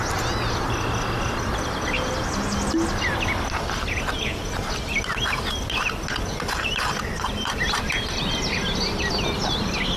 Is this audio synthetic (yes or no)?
no